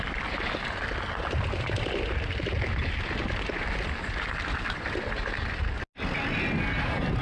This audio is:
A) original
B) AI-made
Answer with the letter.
A